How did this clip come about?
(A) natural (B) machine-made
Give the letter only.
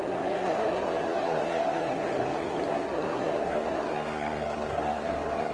B